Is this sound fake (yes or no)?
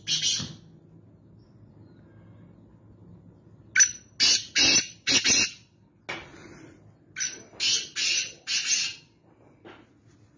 no